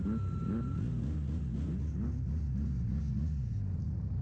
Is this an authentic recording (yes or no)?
yes